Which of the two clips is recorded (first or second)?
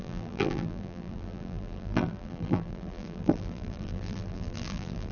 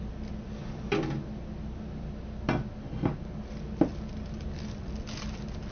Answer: second